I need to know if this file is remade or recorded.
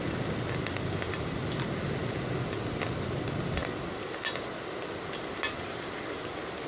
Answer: recorded